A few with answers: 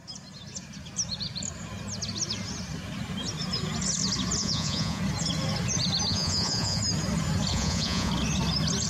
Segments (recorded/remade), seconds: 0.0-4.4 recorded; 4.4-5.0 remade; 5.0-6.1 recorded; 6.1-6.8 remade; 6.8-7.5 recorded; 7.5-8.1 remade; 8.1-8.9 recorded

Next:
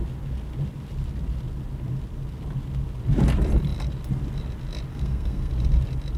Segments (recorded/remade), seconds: 0.0-4.9 recorded; 4.9-5.5 remade; 5.5-6.2 recorded

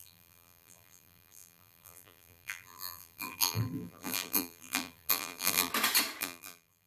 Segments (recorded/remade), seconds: 0.0-5.7 remade; 5.7-6.2 recorded; 6.2-6.9 remade

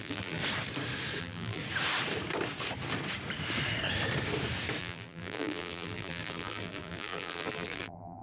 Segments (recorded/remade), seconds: 0.0-0.4 remade; 0.4-1.2 recorded; 1.2-1.6 remade; 1.6-4.8 recorded; 4.8-8.2 remade

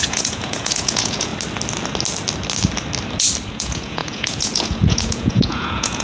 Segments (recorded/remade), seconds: 0.0-1.3 remade; 1.3-3.5 recorded; 3.5-6.0 remade

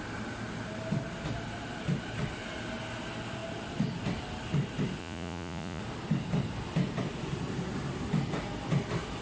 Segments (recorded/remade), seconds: 0.0-5.0 recorded; 5.0-5.8 remade; 5.8-9.2 recorded

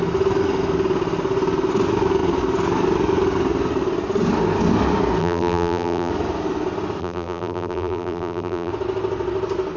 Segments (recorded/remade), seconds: 0.0-5.2 recorded; 5.2-6.1 remade; 6.1-7.0 recorded; 7.0-8.7 remade; 8.7-9.8 recorded